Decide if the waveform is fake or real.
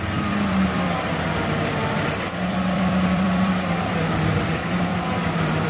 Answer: fake